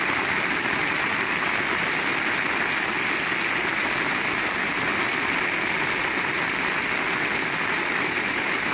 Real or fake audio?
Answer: real